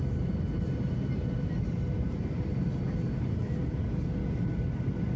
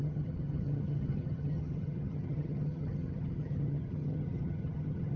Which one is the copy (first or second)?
second